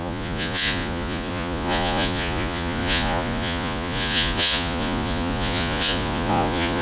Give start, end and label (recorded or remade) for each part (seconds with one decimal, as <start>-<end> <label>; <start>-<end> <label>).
0.0-6.8 remade